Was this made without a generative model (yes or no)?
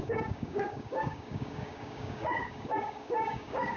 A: no